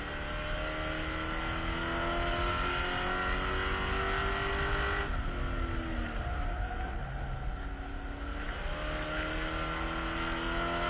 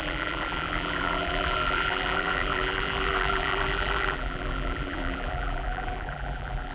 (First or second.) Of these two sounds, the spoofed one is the second